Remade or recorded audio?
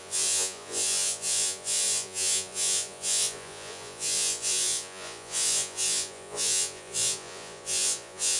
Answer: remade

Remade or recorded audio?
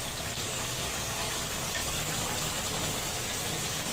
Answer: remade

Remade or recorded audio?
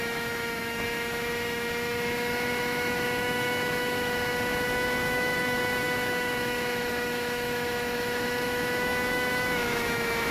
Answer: remade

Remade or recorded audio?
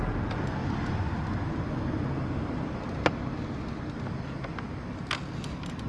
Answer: recorded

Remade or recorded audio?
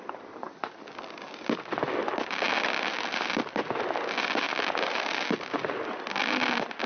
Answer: recorded